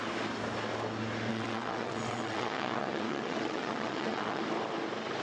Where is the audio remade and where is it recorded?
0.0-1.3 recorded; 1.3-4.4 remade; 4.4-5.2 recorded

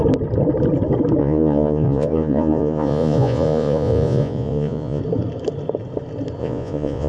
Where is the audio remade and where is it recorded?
0.0-1.2 recorded; 1.2-5.0 remade; 5.0-6.4 recorded; 6.4-7.1 remade

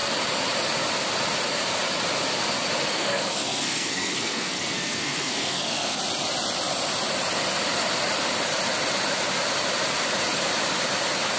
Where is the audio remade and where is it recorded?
0.0-2.9 recorded; 2.9-6.0 remade; 6.0-11.4 recorded

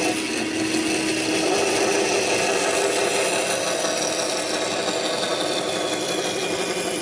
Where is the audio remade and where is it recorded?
0.0-7.0 recorded

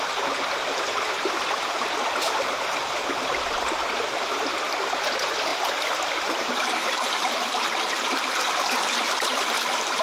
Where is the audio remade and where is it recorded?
0.0-5.5 recorded; 5.5-10.0 remade

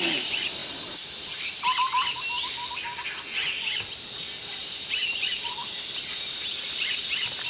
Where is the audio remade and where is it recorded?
0.0-0.6 remade; 0.6-4.6 recorded; 4.6-5.6 remade; 5.6-6.2 recorded; 6.2-7.5 remade

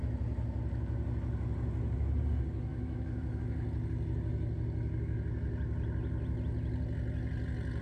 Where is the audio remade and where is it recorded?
0.0-2.7 recorded; 2.7-3.4 remade; 3.4-7.8 recorded

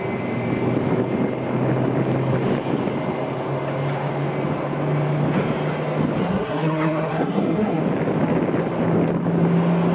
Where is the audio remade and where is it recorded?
0.0-6.2 recorded; 6.2-7.8 remade; 7.8-9.9 recorded